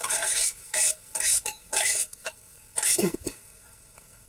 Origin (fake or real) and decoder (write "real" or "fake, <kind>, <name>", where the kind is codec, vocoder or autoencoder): fake, codec, SNAC